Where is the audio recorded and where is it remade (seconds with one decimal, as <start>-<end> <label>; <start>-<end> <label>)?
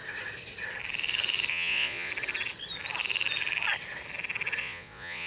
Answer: 0.0-1.5 recorded; 1.5-2.1 remade; 2.1-4.6 recorded; 4.6-5.3 remade